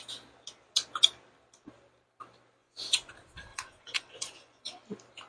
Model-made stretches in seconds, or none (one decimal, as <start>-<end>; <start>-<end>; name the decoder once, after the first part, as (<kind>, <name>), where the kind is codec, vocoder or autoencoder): 2.6-3.1 (vocoder, Vocos); 3.5-4.8